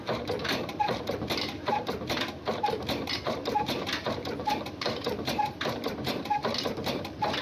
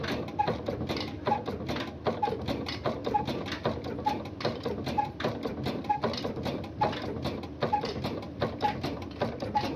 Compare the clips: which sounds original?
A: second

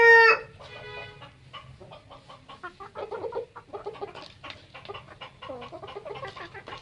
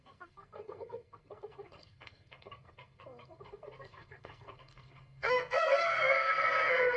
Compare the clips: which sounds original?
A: first